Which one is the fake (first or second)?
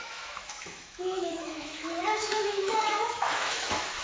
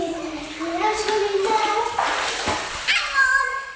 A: first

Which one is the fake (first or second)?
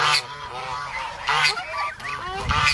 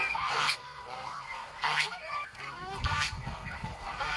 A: second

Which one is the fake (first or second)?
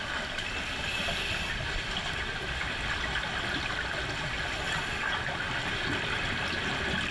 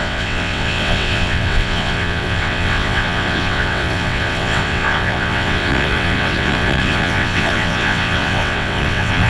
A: second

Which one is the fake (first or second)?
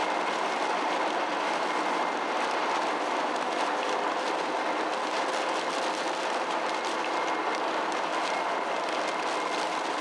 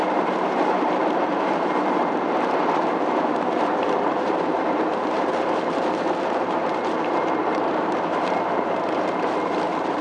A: second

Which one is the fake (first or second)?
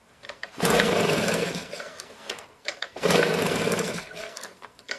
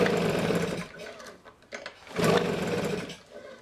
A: first